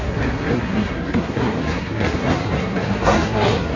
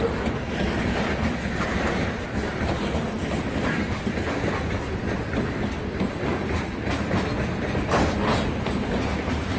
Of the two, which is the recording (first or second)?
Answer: second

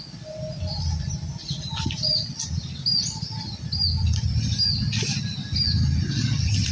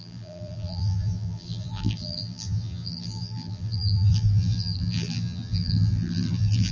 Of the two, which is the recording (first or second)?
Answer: first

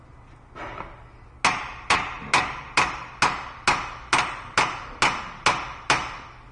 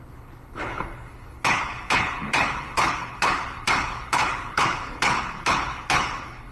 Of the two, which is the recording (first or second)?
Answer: first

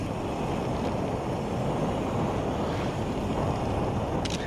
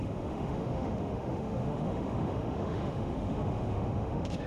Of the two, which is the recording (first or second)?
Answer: first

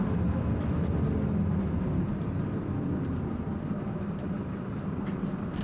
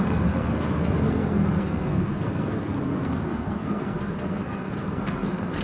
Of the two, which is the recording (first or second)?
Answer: first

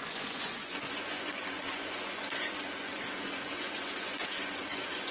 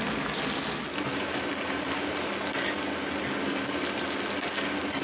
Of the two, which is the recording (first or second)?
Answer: second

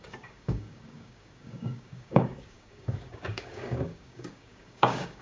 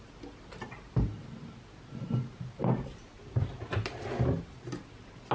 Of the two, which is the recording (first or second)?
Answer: second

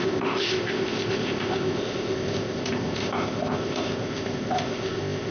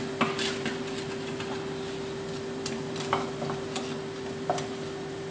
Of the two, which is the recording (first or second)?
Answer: second